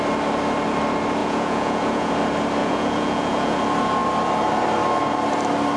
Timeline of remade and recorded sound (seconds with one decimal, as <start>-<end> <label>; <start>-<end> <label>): 0.0-1.2 recorded; 1.2-2.1 remade; 2.1-2.6 recorded; 2.6-3.6 remade; 3.6-5.8 recorded